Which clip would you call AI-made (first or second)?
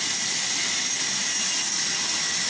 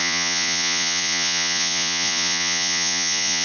second